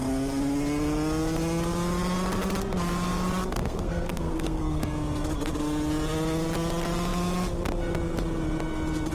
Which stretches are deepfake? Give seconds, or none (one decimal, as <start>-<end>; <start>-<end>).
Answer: 3.6-4.8